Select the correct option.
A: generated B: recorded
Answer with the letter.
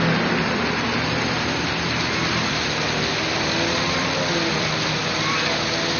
B